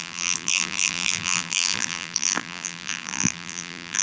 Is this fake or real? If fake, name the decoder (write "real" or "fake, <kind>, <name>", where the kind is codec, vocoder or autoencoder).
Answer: fake, vocoder, BigVGAN v2